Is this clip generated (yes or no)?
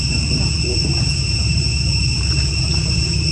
yes